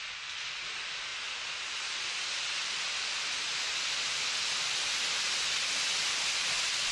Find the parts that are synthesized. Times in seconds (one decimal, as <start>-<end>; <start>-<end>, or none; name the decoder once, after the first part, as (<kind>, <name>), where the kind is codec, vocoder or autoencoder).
none